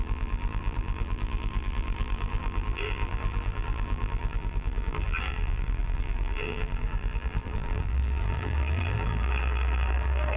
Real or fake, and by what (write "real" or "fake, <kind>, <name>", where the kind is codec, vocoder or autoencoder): fake, vocoder, BigVGAN v2